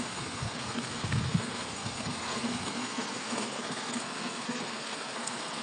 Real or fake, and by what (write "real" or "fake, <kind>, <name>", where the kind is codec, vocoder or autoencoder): fake, codec, SNAC